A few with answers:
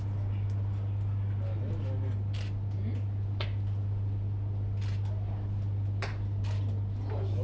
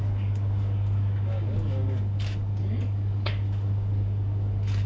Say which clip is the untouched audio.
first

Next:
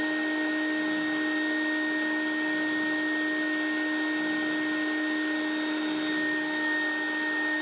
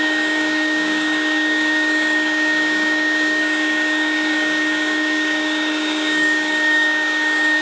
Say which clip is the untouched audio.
first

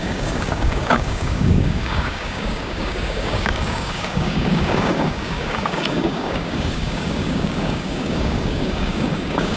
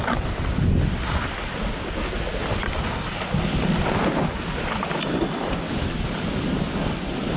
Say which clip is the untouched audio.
second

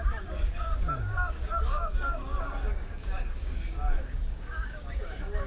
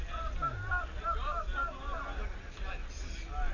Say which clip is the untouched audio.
second